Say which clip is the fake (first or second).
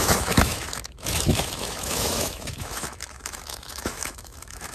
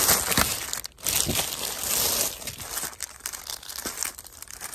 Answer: first